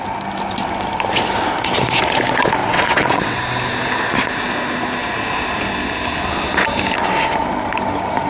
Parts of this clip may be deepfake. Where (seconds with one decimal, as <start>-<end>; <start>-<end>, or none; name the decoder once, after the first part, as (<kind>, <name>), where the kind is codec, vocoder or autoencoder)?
2.6-3.4 (vocoder, WaveNeXt)

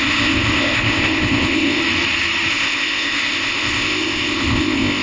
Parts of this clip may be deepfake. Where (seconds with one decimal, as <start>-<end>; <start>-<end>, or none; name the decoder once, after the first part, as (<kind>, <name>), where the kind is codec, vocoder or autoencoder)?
0.0-1.8 (codec, ZipCodec); 2.5-5.0

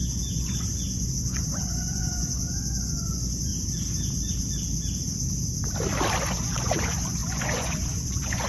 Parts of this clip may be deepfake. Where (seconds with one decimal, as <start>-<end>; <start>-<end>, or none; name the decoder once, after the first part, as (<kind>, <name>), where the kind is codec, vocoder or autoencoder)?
0.0-3.5 (vocoder, Vocos); 6.2-8.5

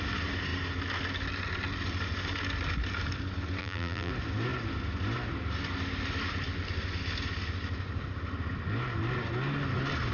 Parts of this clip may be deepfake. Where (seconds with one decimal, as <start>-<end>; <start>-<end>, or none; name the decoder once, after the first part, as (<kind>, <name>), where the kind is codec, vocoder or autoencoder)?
3.6-4.1 (vocoder, BigVGAN v2)

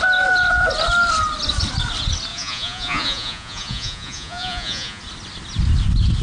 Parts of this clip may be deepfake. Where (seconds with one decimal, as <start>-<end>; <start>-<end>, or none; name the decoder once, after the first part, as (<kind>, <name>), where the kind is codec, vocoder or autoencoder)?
2.3-5.0 (vocoder, Vocos)

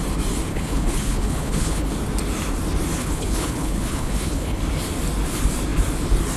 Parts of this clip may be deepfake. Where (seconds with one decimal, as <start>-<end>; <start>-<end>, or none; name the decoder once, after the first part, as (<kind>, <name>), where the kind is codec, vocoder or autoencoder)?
0.5-1.9 (codec, HILCodec); 3.0-4.6

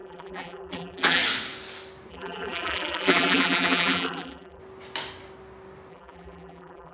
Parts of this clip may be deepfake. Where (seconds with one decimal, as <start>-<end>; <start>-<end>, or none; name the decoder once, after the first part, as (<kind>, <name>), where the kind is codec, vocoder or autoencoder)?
0.0-1.2 (vocoder, BigVGAN v2); 2.1-4.6; 5.9-6.9